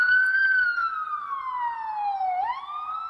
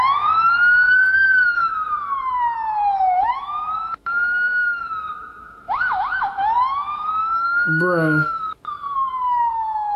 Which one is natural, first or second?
first